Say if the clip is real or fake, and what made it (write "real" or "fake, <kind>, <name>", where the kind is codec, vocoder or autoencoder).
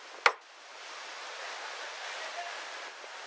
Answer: real